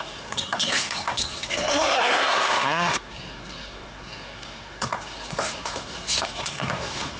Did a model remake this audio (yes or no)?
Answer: yes